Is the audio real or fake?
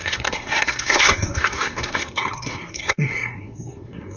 fake